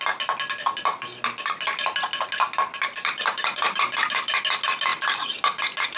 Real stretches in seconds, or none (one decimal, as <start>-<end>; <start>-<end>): 0.0-2.7; 4.4-6.0

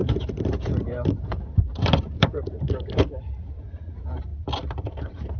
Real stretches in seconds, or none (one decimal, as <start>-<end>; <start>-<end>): 4.3-5.0

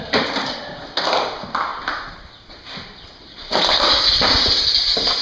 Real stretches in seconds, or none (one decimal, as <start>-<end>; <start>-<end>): none

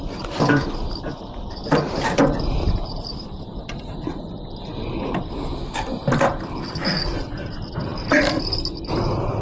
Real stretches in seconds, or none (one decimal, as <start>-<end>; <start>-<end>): 0.0-1.6; 2.2-2.6; 3.6-9.4

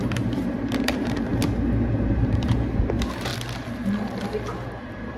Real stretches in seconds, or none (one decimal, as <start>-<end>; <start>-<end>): 1.3-2.1; 3.3-4.7

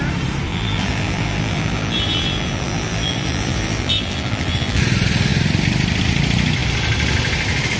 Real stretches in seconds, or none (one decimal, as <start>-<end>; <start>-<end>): 0.0-0.5; 4.8-7.8